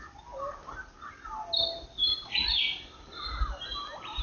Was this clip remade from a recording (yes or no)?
no